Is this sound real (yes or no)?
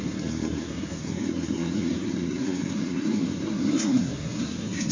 no